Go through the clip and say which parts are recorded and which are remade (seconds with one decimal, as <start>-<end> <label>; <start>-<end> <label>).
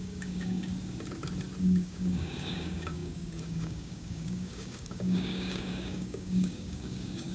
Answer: 0.0-0.7 remade; 0.7-1.6 recorded; 1.6-7.3 remade